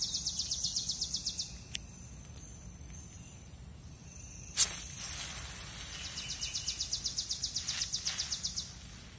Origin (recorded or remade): recorded